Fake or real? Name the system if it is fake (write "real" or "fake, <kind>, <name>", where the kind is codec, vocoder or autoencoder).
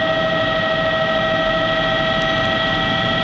real